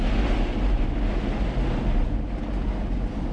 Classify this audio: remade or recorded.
recorded